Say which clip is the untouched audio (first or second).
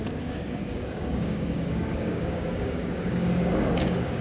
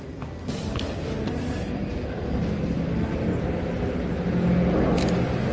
second